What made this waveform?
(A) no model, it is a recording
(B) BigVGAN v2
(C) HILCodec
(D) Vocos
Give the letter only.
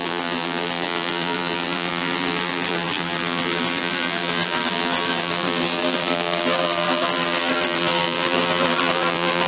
B